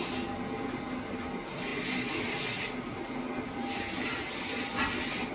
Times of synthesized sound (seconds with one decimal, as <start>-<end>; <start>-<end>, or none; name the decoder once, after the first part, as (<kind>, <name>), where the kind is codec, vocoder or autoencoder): none

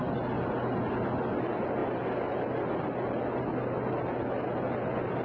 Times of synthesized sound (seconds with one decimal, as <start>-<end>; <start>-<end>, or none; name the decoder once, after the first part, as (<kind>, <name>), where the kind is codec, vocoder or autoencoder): none